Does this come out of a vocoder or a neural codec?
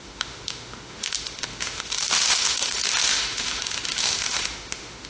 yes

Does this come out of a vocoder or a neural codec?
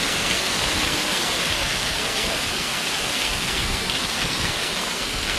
yes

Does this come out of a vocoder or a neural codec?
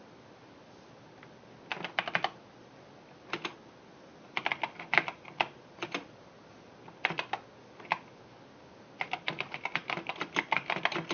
no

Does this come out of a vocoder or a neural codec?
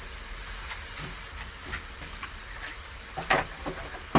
no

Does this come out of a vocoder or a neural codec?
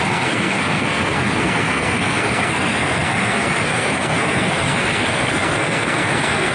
yes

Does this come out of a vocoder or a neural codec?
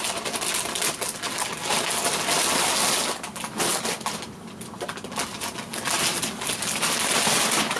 no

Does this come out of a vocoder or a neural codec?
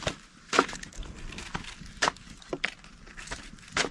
no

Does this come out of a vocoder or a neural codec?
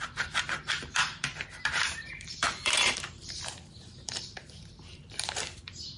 yes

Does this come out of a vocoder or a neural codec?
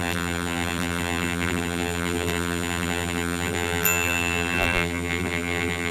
yes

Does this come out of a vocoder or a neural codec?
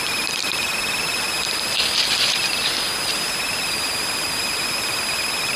no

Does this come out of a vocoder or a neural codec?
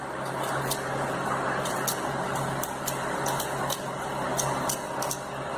no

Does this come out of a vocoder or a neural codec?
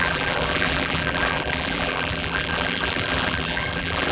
yes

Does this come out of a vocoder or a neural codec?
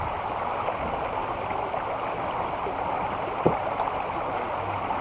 no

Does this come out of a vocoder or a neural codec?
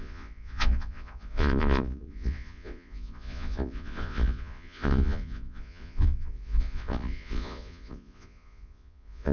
yes